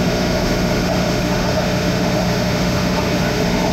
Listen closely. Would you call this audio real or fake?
fake